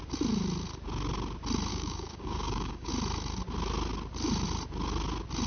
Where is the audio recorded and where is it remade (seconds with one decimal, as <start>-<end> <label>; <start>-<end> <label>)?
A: 0.0-1.7 recorded; 1.7-2.9 remade; 2.9-5.5 recorded